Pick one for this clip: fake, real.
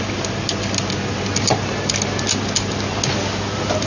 real